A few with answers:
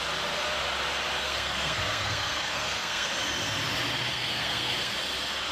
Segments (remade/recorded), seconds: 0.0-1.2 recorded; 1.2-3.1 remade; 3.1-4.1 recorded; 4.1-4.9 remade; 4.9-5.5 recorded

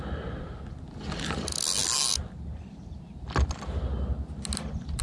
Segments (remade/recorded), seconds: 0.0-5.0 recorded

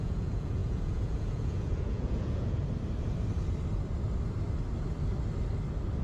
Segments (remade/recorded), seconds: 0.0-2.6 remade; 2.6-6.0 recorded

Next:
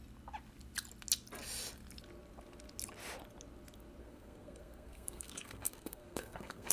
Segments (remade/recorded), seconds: 0.0-4.0 recorded; 4.0-6.7 remade

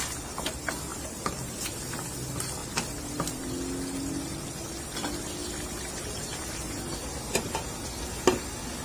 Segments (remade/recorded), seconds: 0.0-2.6 recorded; 2.6-3.5 remade; 3.5-5.4 recorded; 5.4-7.4 remade; 7.4-8.8 recorded

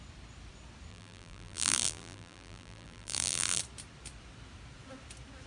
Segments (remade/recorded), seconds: 0.0-0.9 recorded; 0.9-3.6 remade; 3.6-5.5 recorded

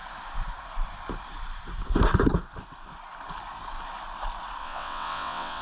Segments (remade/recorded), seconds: 0.0-4.6 recorded; 4.6-5.6 remade

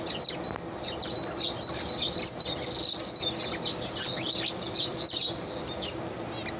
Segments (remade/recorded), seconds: 0.0-4.9 recorded; 4.9-5.9 remade; 5.9-6.6 recorded